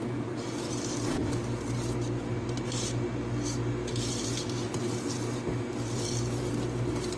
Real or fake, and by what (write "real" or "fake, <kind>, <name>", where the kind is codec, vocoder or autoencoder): real